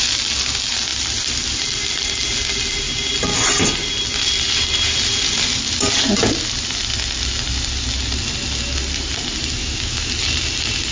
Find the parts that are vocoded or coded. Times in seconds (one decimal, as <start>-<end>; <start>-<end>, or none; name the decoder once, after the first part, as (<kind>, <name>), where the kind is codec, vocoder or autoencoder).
9.6-10.1 (autoencoder, DAC-VAE)